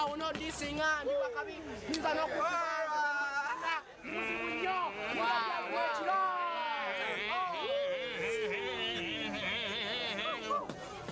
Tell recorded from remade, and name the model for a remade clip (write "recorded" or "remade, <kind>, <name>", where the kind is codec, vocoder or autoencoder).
recorded